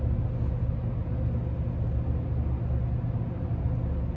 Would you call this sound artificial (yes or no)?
no